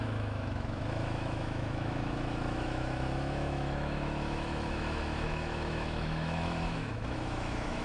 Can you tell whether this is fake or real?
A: fake